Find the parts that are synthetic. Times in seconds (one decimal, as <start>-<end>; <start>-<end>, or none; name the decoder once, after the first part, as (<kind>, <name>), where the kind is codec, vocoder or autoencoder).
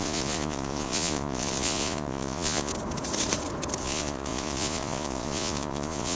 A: 0.0-2.7 (vocoder, Vocos); 3.8-6.2